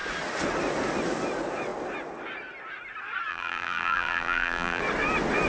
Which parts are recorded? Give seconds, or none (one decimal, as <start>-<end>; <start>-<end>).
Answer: 0.0-3.3; 4.8-5.5